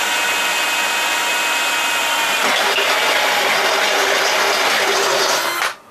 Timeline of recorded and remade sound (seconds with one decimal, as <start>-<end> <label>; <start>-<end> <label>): 0.0-5.9 recorded